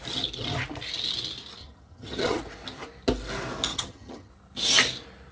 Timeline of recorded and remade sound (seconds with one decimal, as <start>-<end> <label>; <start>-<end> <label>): 0.0-1.6 recorded; 1.6-2.4 remade; 2.4-3.7 recorded; 3.7-4.3 remade; 4.3-5.3 recorded